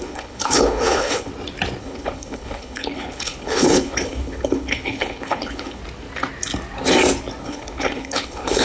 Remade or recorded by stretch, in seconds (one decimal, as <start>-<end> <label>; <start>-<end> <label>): 0.0-1.3 remade; 1.3-1.8 recorded; 1.8-5.8 remade; 5.8-7.4 recorded; 7.4-8.6 remade